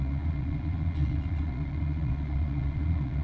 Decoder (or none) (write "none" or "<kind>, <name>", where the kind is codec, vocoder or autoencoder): vocoder, Vocos